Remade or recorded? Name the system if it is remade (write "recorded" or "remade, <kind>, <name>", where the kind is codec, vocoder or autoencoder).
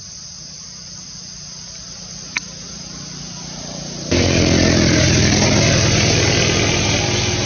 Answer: recorded